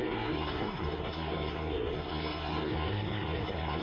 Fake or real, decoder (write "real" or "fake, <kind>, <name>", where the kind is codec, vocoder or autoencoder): fake, codec, SNAC